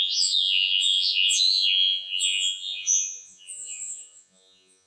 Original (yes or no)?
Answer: no